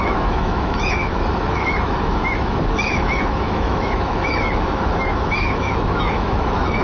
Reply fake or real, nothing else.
fake